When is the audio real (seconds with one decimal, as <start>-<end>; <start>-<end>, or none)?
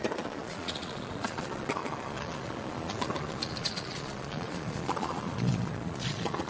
none